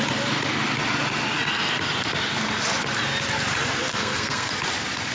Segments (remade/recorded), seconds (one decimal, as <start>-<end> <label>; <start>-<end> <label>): 0.0-3.9 recorded; 3.9-4.5 remade; 4.5-5.1 recorded